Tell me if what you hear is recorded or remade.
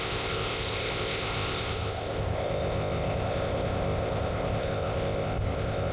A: remade